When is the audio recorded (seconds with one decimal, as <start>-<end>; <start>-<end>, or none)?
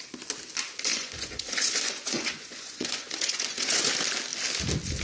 0.0-0.9; 3.9-5.0